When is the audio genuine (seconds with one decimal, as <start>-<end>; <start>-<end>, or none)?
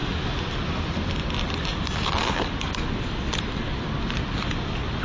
0.0-5.0